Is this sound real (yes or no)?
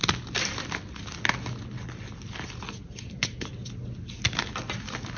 yes